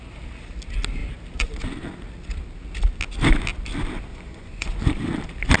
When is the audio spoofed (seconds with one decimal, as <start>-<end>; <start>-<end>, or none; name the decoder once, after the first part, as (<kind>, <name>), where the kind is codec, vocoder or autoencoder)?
4.1-4.8 (vocoder, Vocos)